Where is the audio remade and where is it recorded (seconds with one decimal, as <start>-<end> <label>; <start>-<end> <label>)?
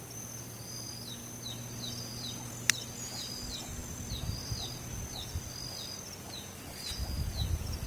0.0-7.9 recorded